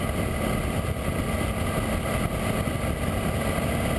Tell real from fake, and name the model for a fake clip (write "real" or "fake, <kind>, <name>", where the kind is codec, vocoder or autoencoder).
real